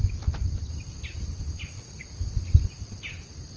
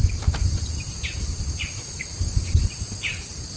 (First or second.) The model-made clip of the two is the second